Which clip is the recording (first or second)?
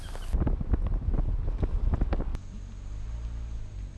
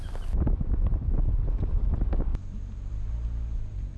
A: first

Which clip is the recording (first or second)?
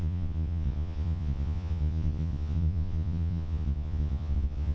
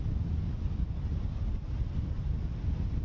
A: second